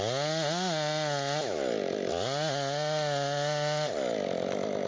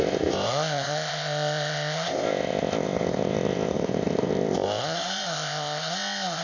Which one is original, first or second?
first